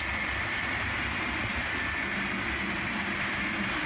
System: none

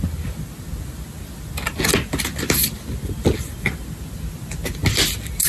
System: none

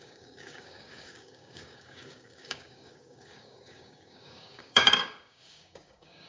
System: codec, DAC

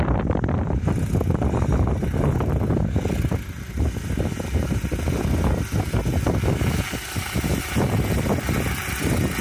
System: none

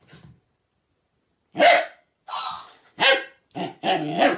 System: none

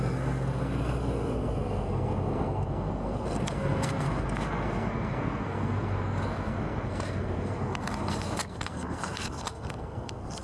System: codec, SNAC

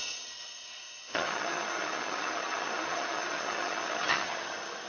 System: vocoder, HiFi-GAN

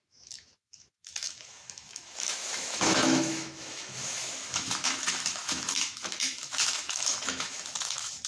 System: autoencoder, DAC-VAE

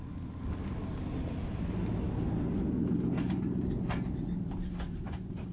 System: none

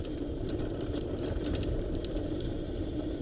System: vocoder, BigVGAN v2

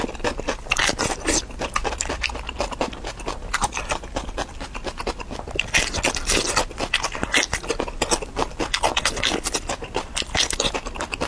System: none